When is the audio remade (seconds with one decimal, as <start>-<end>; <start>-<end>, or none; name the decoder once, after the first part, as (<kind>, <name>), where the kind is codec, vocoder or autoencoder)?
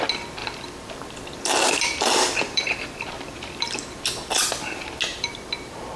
0.4-4.0 (vocoder, BigVGAN v2); 5.1-6.0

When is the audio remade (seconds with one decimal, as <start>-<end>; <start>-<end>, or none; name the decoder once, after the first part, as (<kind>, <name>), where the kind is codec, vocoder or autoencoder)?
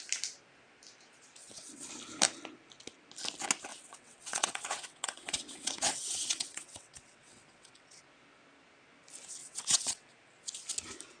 1.4-1.9 (vocoder, WaveNeXt); 3.7-8.0; 9.4-10.1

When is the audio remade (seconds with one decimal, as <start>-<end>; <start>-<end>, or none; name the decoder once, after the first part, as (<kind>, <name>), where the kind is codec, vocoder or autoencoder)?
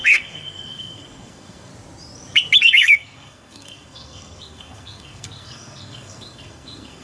0.0-1.7 (codec, SNAC); 2.6-7.0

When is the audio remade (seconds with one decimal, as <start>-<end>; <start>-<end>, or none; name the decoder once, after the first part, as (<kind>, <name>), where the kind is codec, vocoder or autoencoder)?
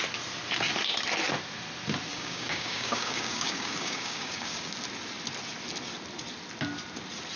2.1-4.7 (codec, DAC)